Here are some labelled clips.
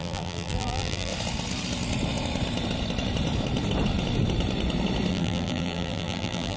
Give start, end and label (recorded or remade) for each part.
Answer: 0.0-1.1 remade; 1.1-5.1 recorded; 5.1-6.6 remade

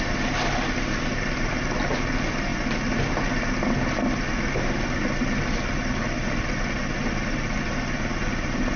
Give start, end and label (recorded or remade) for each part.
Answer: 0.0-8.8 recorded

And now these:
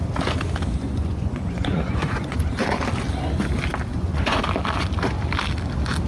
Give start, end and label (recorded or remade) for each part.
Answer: 0.0-0.8 recorded; 0.8-2.5 remade; 2.5-3.9 recorded; 3.9-4.4 remade; 4.4-6.1 recorded

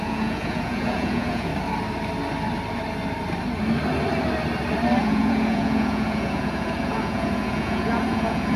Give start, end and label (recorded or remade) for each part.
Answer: 0.0-1.5 remade; 1.5-5.0 recorded; 5.0-8.6 remade

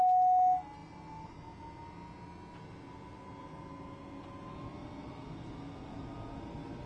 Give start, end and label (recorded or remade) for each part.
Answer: 0.0-5.9 recorded; 5.9-6.4 remade; 6.4-6.9 recorded